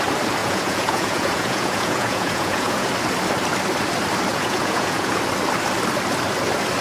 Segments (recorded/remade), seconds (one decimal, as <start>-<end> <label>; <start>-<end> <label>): 0.0-0.4 recorded; 0.4-2.9 remade; 2.9-4.3 recorded; 4.3-5.2 remade; 5.2-6.8 recorded